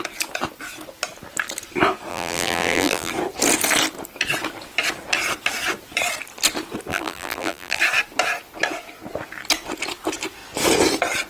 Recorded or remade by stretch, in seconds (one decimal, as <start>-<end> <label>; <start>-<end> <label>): 0.0-2.1 recorded; 2.1-3.1 remade; 3.1-6.9 recorded; 6.9-7.8 remade; 7.8-11.3 recorded